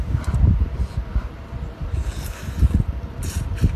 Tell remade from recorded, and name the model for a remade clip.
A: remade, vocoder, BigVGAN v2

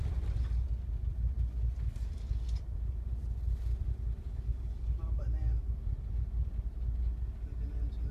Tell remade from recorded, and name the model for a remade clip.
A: recorded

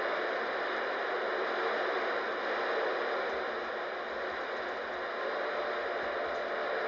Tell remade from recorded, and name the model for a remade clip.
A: recorded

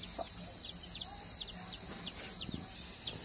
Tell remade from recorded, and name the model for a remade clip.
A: recorded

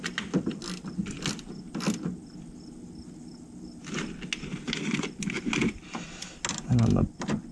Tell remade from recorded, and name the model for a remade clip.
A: recorded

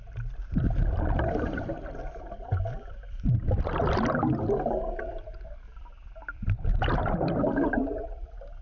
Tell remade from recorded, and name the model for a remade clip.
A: remade, vocoder, BigVGAN v2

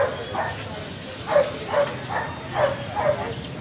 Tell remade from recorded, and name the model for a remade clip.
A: recorded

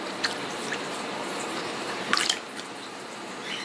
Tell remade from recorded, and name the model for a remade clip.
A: remade, vocoder, BigVGAN v2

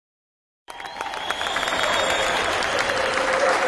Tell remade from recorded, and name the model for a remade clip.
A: remade, vocoder, BigVGAN v2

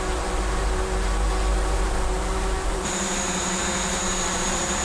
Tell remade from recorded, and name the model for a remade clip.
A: remade, vocoder, BigVGAN v2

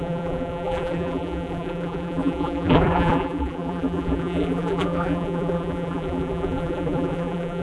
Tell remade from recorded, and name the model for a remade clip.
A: remade, vocoder, BigVGAN v2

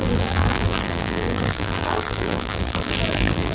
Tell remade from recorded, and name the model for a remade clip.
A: remade, vocoder, BigVGAN v2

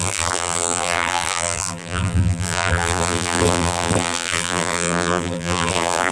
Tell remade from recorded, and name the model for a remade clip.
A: remade, vocoder, BigVGAN v2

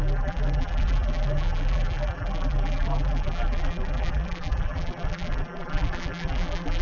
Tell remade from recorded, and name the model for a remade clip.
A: remade, vocoder, BigVGAN v2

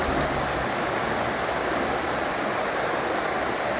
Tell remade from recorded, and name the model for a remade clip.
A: recorded